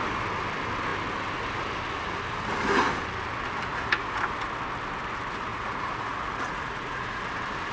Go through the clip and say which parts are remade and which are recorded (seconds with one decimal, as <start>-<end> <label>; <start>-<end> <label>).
0.0-3.7 recorded; 3.7-4.2 remade; 4.2-5.5 recorded; 5.5-7.2 remade; 7.2-7.7 recorded